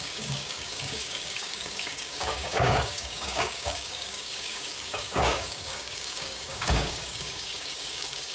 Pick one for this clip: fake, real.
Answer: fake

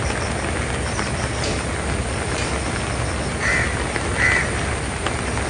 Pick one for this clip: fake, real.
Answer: real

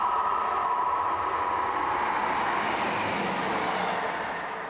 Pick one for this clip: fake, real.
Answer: real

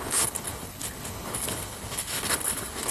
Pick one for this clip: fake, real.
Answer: fake